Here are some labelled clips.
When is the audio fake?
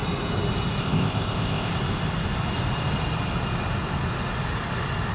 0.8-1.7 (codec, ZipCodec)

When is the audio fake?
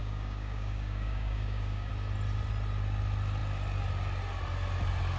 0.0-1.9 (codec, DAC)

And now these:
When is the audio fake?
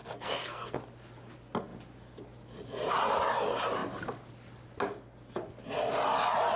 0.0-0.8 (codec, SNAC)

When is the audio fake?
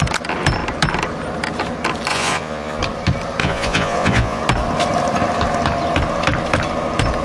2.1-2.8 (vocoder, Vocos); 3.4-4.4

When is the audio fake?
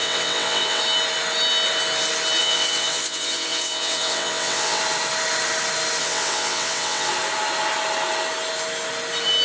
0.0-0.8 (vocoder, WaveNeXt); 2.4-4.8; 6.0-7.1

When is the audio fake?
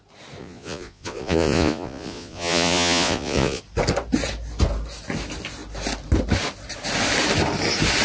0.4-3.6 (vocoder, Vocos)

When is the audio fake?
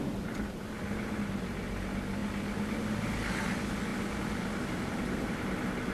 none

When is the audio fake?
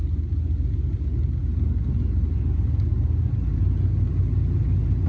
none